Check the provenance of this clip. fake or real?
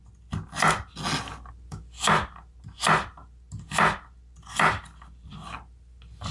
real